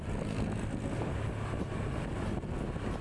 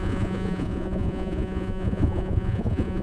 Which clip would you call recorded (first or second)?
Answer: first